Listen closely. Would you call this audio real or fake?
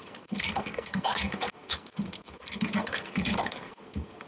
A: fake